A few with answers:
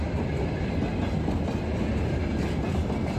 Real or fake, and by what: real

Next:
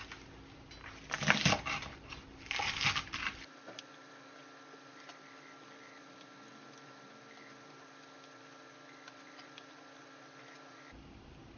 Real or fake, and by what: real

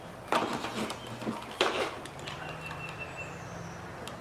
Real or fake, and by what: real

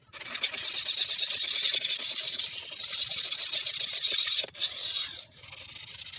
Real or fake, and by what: real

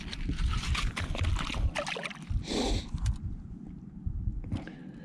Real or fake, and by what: real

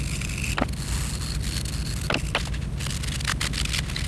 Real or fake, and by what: real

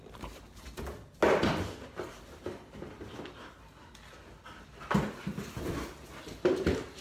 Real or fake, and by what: real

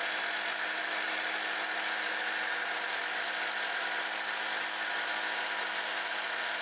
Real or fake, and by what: real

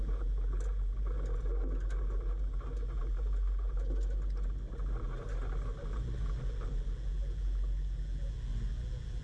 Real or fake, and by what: real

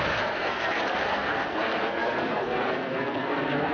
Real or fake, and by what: fake, codec, SNAC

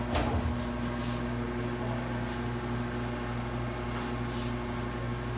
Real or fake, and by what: real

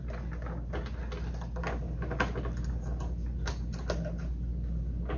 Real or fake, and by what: real